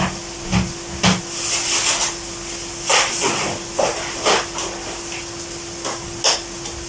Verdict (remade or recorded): recorded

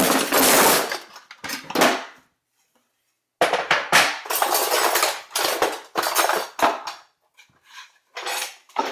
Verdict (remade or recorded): recorded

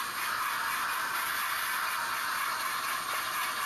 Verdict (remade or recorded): recorded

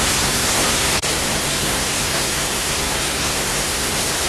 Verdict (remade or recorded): remade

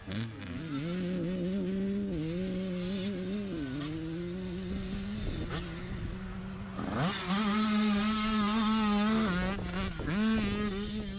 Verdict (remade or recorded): recorded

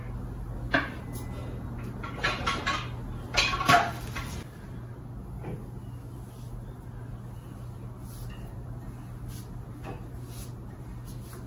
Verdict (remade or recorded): recorded